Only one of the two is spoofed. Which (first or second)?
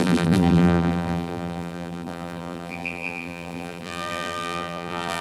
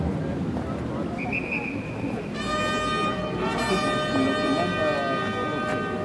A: first